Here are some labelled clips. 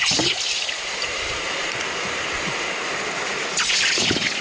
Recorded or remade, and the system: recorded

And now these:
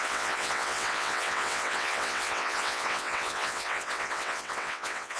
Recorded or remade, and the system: remade, vocoder, WaveNeXt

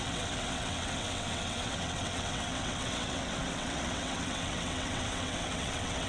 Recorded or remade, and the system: remade, vocoder, WaveNeXt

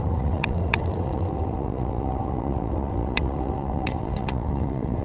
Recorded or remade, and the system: remade, vocoder, WaveNeXt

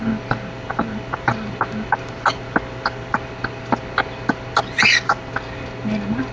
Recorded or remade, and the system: recorded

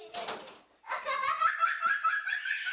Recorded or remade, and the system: recorded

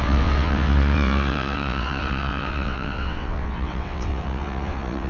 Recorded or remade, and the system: remade, vocoder, WaveNeXt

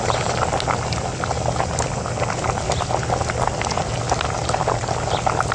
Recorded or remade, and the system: recorded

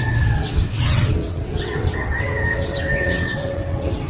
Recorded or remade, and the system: remade, vocoder, WaveNeXt